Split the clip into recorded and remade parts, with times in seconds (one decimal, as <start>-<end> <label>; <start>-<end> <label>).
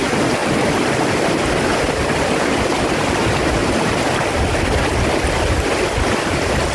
0.0-0.4 remade; 0.4-1.5 recorded; 1.5-3.6 remade; 3.6-4.6 recorded; 4.6-6.7 remade